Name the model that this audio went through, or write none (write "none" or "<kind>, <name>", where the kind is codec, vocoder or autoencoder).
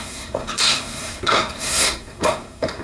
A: codec, SNAC